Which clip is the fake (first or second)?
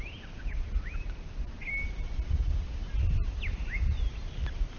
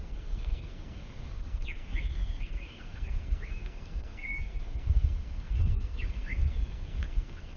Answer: second